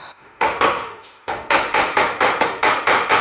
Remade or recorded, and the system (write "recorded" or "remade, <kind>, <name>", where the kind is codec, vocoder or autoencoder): remade, autoencoder, DAC-VAE